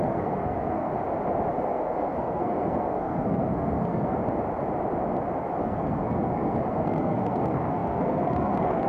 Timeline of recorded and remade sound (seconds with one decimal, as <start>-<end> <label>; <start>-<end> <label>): 0.0-0.9 remade; 0.9-1.5 recorded; 1.5-4.2 remade; 4.2-5.6 recorded; 5.6-8.9 remade